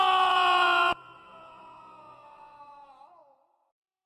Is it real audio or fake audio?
fake